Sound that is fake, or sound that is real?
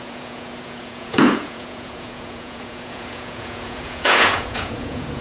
fake